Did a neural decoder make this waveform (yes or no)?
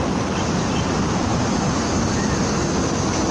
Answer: no